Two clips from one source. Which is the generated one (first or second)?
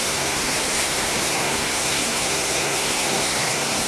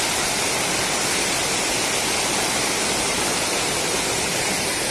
first